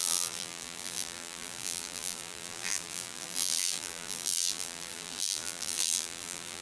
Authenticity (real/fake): fake